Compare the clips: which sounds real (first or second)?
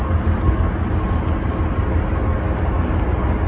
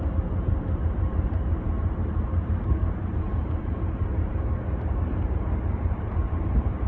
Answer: first